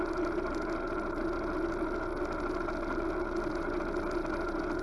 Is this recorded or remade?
recorded